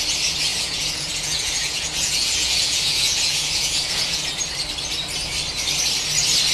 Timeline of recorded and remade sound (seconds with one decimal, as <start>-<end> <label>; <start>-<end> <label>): 0.0-0.5 recorded; 0.5-4.4 remade; 4.4-6.5 recorded